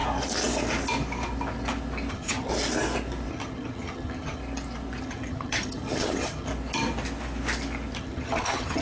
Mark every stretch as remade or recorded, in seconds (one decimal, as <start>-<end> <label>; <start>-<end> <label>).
0.0-2.1 recorded; 2.1-2.5 remade; 2.5-3.3 recorded; 3.3-4.4 remade; 4.4-5.0 recorded; 5.0-6.5 remade; 6.5-8.0 recorded; 8.0-8.8 remade